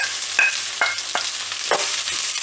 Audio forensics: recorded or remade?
recorded